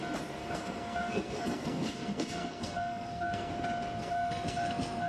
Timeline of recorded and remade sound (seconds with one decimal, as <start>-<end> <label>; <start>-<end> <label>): 0.0-0.4 recorded; 0.4-3.5 remade; 3.5-4.0 recorded; 4.0-5.1 remade